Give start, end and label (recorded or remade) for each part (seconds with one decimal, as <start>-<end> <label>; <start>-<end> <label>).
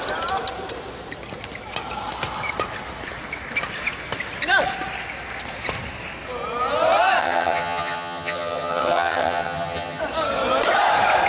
0.0-7.2 recorded; 7.2-10.0 remade; 10.0-11.3 recorded